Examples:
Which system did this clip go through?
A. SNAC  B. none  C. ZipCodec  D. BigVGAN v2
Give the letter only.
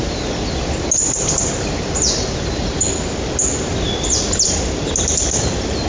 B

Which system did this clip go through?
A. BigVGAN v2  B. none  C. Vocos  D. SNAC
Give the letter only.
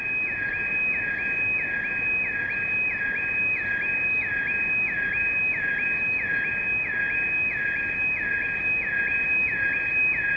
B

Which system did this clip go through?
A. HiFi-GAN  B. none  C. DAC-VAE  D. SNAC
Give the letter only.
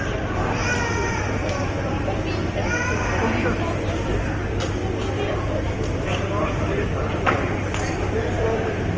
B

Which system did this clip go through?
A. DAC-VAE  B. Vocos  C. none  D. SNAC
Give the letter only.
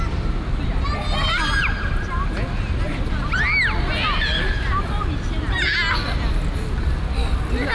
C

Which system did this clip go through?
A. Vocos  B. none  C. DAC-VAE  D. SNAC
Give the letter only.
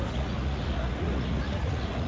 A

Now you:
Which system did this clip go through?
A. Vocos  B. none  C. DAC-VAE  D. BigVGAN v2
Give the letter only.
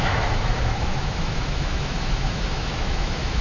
C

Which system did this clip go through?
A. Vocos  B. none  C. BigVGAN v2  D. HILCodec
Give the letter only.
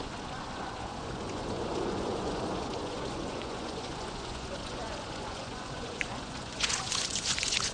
A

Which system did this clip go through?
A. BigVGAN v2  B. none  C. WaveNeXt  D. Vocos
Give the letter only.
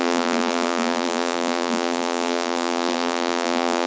A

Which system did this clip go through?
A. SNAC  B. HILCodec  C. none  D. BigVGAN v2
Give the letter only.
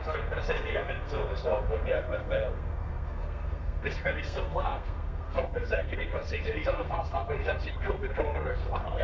A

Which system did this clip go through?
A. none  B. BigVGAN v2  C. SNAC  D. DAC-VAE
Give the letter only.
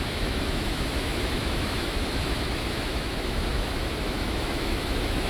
D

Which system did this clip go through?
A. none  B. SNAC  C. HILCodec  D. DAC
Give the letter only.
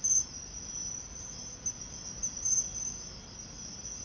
A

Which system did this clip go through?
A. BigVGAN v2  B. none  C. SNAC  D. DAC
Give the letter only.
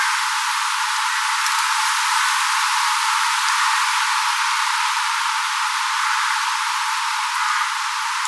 B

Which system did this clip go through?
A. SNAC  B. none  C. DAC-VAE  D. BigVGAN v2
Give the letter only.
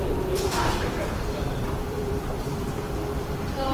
D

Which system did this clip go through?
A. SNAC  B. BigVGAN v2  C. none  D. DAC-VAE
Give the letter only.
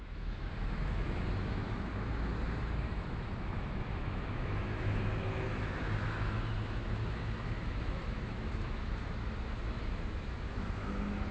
D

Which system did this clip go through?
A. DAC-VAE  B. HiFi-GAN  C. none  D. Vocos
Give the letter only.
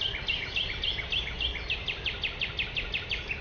C